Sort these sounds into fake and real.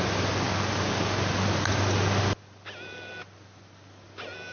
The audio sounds real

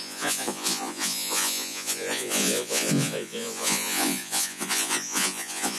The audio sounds fake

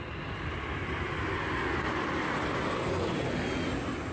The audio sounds real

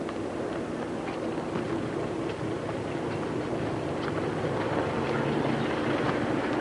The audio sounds real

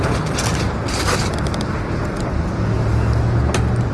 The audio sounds real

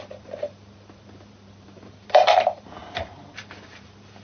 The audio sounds fake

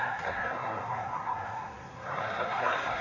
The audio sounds fake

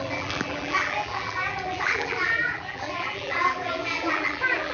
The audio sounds fake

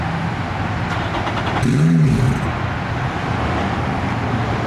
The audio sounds real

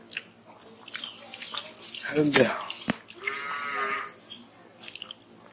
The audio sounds real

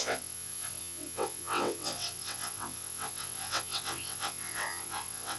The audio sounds fake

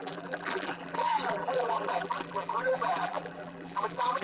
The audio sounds fake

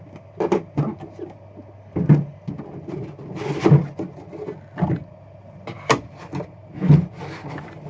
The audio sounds real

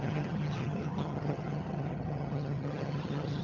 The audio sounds fake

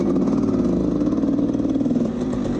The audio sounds real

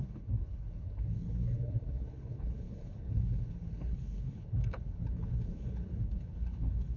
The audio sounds fake